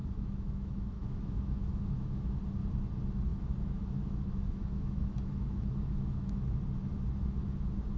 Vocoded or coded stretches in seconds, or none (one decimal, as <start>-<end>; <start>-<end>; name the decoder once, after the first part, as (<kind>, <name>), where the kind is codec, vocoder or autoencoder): 0.0-2.4 (autoencoder, DAC-VAE); 3.3-6.6